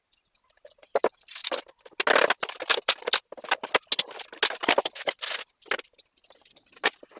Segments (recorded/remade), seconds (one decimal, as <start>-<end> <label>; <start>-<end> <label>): 0.0-7.2 recorded

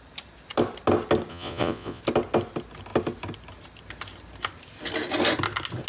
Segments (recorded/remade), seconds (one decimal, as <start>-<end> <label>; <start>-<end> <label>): 0.0-1.3 recorded; 1.3-2.0 remade; 2.0-5.9 recorded

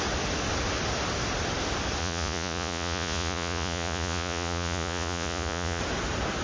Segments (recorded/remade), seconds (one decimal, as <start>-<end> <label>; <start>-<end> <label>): 0.0-2.0 recorded; 2.0-5.8 remade; 5.8-6.4 recorded

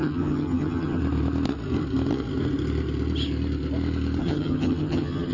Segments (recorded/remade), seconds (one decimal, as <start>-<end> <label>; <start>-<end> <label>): 0.0-1.0 remade; 1.0-4.2 recorded; 4.2-5.3 remade

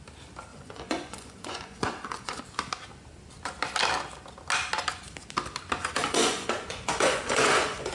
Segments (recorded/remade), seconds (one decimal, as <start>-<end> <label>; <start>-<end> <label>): 0.0-0.5 recorded; 0.5-2.4 remade; 2.4-6.0 recorded; 6.0-7.9 remade